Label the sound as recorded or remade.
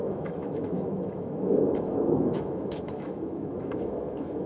remade